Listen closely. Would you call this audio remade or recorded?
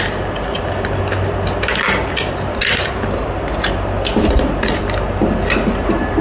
recorded